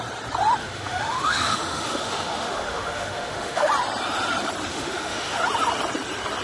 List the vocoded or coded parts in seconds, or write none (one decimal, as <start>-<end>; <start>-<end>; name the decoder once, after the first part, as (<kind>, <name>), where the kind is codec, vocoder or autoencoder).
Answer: 0.6-3.7 (autoencoder, DAC-VAE); 4.7-5.4